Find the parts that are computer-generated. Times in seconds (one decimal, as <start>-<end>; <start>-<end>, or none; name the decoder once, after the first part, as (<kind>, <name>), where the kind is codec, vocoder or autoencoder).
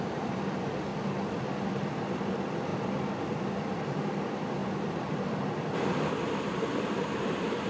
0.0-0.9 (vocoder, BigVGAN v2); 1.7-7.7